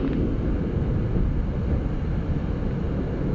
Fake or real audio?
real